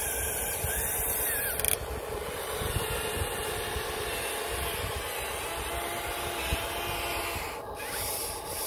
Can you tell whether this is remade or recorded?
recorded